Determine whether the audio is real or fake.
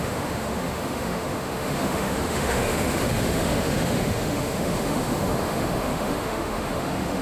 fake